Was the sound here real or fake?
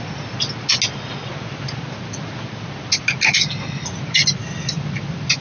real